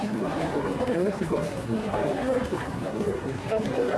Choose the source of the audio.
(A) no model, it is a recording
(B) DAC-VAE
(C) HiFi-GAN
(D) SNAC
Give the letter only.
D